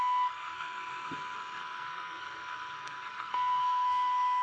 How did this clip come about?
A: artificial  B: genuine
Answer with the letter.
A